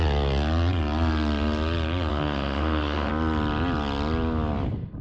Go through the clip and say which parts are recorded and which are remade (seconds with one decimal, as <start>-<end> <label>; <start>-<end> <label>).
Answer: 0.0-2.1 recorded; 2.1-3.1 remade; 3.1-5.0 recorded